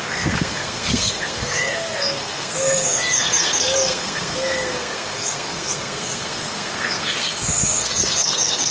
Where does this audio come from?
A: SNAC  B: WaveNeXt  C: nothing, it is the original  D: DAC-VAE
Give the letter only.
A